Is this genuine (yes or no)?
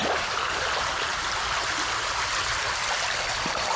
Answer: yes